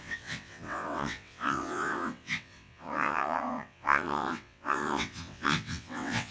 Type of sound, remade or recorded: remade